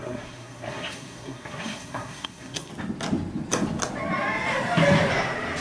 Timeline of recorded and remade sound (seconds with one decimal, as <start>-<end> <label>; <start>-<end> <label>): 0.0-2.7 remade; 2.7-5.6 recorded